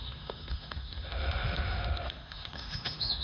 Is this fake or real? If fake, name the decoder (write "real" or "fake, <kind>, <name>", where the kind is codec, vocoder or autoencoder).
fake, autoencoder, DAC-VAE